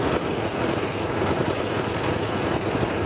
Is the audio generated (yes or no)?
no